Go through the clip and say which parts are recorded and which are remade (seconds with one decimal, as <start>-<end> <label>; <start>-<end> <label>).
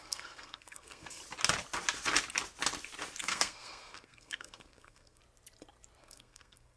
0.0-1.2 remade; 1.2-3.2 recorded; 3.2-5.2 remade; 5.2-6.0 recorded; 6.0-6.8 remade